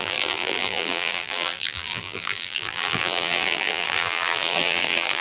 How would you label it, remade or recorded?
remade